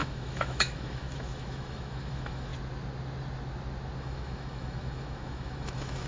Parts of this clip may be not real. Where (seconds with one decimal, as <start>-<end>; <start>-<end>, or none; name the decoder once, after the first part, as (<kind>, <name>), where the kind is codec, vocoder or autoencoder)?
0.0-2.5 (autoencoder, DAC-VAE); 4.0-6.1